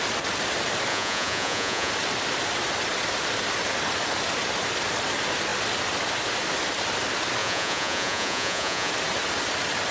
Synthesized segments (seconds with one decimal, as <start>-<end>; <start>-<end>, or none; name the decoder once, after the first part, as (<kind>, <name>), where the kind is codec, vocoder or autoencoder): 0.9-1.9 (vocoder, Vocos); 7.4-8.9